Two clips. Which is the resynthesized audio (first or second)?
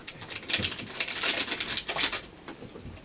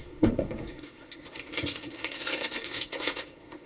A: second